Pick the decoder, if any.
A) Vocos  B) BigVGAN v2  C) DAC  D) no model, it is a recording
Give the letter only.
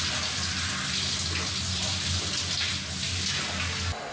D